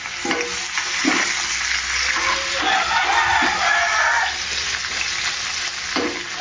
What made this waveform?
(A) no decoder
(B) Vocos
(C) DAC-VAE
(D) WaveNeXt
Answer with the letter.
A